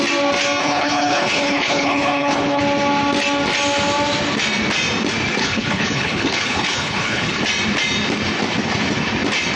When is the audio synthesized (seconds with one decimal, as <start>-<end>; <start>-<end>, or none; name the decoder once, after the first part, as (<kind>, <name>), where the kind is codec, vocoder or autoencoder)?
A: 0.6-2.6 (codec, HILCodec); 5.4-7.4